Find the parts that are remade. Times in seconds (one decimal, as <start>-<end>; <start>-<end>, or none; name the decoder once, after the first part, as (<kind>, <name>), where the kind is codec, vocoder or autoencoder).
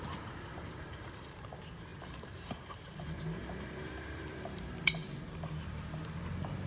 0.0-5.0 (vocoder, BigVGAN v2)